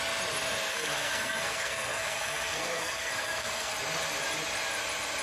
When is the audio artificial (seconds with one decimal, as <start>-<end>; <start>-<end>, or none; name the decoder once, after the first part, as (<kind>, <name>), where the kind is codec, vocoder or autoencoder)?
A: 0.7-3.7 (codec, SNAC)